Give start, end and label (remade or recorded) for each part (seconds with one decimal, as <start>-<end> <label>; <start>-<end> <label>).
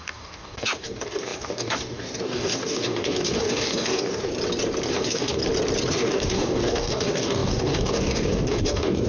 0.0-4.3 remade; 4.3-4.9 recorded; 4.9-5.4 remade; 5.4-5.9 recorded; 5.9-9.1 remade